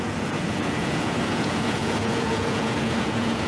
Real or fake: fake